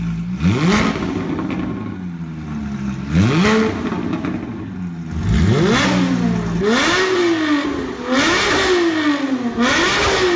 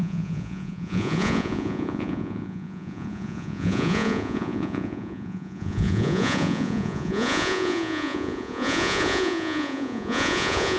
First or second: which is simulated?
second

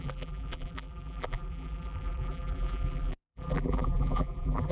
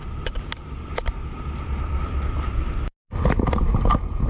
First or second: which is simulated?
first